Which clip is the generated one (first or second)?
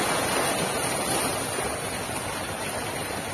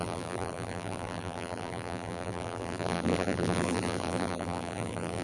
second